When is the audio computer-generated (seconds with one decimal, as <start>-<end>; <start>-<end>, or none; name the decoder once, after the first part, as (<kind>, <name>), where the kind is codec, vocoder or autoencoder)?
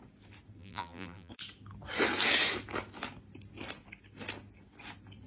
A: 0.6-1.3 (vocoder, BigVGAN v2)